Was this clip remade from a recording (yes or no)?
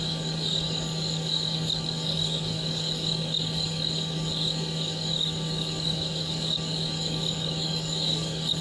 yes